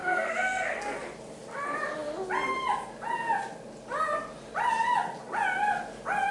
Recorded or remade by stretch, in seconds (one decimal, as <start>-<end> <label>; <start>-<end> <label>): 0.0-0.8 remade; 0.8-6.3 recorded